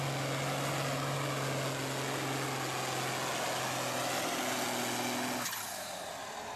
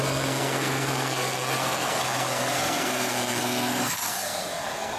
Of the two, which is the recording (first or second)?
first